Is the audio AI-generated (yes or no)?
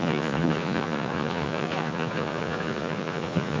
yes